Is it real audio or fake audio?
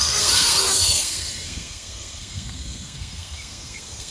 fake